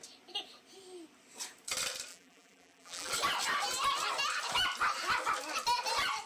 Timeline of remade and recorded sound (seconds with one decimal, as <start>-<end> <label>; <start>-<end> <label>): 0.0-2.1 recorded; 2.1-3.1 remade; 3.1-6.3 recorded